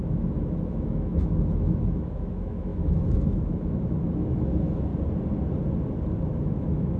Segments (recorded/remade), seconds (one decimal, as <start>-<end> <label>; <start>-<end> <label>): 0.0-4.9 remade; 4.9-6.3 recorded; 6.3-7.0 remade